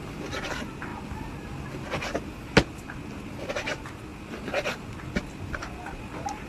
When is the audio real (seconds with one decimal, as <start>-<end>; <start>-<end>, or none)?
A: 0.0-6.5

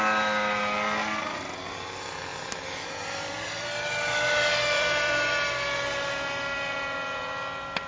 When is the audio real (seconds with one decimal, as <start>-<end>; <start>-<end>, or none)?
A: 0.0-2.3; 6.1-7.9

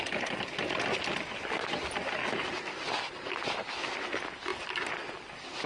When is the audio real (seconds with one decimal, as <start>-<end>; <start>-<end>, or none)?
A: 0.0-2.2; 3.0-5.7

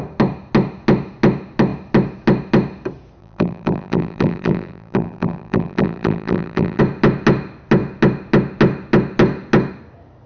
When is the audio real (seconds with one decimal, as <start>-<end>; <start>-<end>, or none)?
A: 0.0-3.2; 6.8-10.3

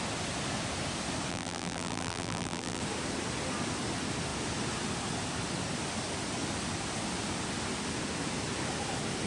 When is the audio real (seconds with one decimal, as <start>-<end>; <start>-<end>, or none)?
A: 0.0-1.3; 2.8-9.3

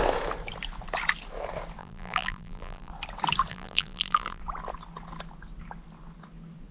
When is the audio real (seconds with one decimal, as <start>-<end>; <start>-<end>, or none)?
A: 0.0-1.8; 2.9-3.5; 4.4-6.7

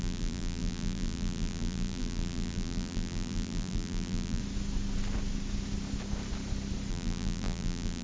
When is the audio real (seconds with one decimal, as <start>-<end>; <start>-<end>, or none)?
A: 4.4-6.9